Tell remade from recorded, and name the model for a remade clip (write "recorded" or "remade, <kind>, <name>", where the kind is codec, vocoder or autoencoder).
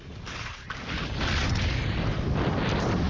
recorded